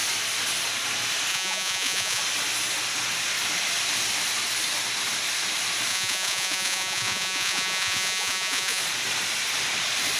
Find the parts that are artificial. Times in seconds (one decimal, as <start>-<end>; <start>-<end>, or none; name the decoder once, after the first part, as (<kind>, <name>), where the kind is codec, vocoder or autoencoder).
1.3-2.2 (vocoder, Vocos); 5.9-8.8